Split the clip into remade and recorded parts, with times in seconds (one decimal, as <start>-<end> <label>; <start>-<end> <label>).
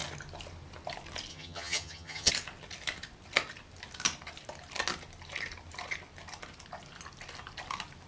0.0-1.3 recorded; 1.3-2.3 remade; 2.3-8.1 recorded